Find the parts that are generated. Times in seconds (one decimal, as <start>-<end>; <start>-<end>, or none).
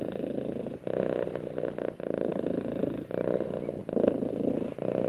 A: none